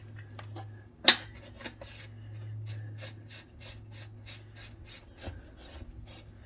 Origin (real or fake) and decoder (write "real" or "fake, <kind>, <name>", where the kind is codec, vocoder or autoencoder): real